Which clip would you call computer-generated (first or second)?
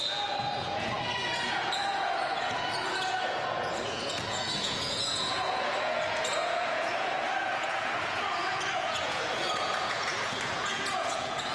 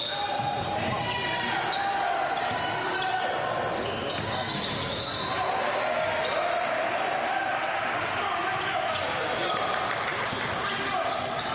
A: first